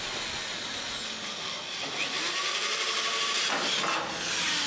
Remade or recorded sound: recorded